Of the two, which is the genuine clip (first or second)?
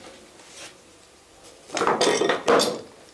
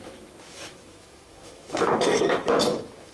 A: first